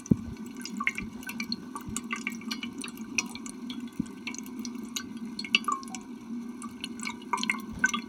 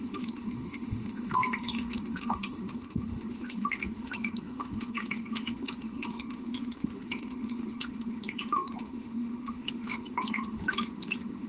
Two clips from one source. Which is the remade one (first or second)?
second